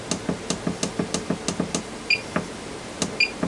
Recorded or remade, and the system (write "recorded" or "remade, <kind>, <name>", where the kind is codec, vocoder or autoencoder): recorded